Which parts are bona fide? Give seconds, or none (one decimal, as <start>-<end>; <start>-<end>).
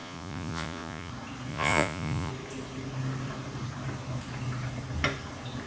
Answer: 1.1-1.5; 2.3-5.7